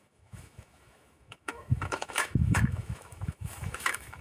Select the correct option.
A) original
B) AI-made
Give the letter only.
B